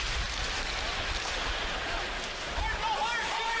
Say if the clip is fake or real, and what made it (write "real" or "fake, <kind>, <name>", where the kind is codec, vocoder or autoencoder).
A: real